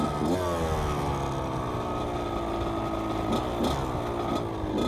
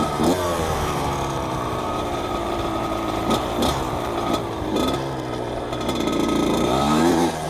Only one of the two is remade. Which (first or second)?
second